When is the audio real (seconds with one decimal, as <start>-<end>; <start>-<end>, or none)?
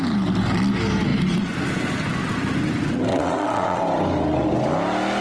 0.0-3.1; 3.8-5.2